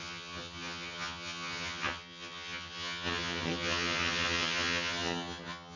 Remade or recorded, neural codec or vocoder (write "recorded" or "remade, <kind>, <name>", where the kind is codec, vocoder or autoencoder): remade, vocoder, HiFi-GAN